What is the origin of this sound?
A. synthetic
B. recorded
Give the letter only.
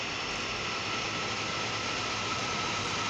B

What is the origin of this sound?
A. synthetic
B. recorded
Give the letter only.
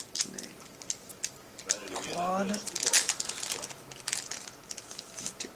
B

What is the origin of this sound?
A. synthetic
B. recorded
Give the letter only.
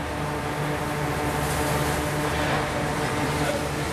B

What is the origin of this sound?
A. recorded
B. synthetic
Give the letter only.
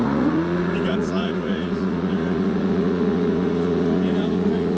B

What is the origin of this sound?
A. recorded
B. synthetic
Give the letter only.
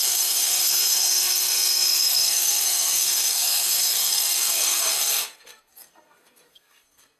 B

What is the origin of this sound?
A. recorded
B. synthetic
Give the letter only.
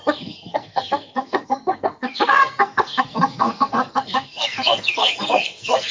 B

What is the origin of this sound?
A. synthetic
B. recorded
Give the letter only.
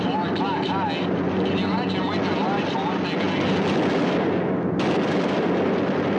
B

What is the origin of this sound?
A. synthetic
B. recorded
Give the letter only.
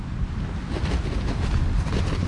B